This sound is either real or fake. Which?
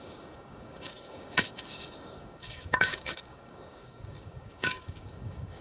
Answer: fake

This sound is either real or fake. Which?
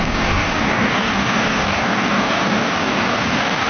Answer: fake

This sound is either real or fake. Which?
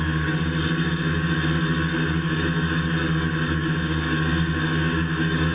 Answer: fake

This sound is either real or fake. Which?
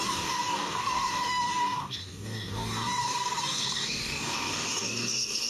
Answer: fake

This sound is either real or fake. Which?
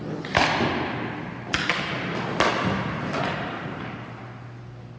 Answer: real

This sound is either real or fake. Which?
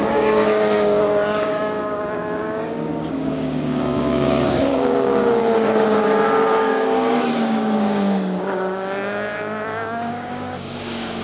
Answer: fake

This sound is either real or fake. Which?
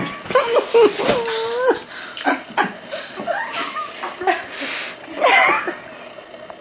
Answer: real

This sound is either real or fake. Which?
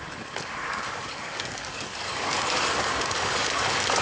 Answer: fake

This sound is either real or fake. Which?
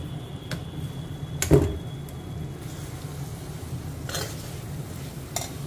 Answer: real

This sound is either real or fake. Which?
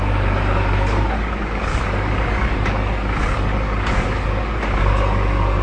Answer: fake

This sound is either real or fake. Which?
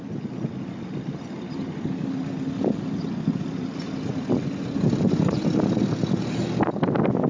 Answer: real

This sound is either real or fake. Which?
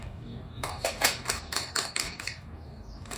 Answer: fake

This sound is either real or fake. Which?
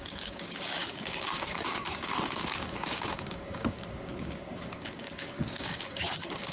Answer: fake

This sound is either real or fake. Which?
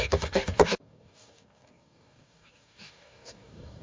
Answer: fake